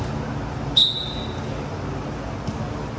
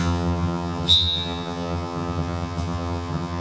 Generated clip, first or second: second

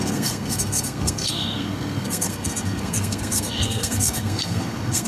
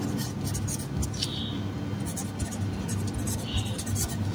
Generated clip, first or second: first